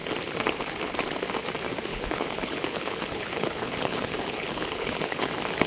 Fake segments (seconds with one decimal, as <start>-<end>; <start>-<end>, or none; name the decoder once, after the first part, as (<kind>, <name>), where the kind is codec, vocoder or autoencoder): 1.9-5.3 (codec, HILCodec)